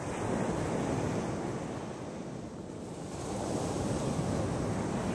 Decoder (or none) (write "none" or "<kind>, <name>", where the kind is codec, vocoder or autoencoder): none